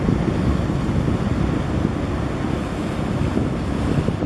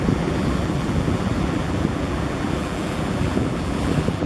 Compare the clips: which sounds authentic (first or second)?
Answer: first